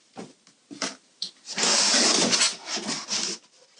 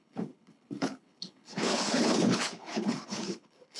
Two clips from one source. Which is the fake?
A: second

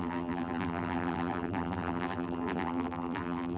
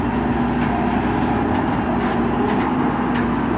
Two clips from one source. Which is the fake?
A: first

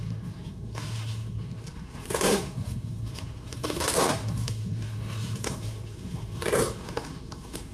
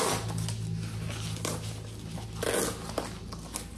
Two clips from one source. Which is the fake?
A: first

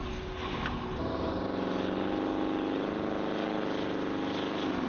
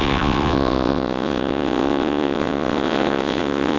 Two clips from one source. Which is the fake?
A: second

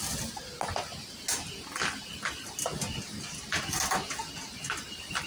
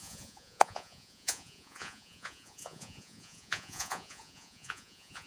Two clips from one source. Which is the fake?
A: second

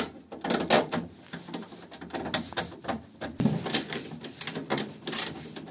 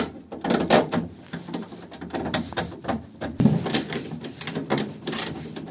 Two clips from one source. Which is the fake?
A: second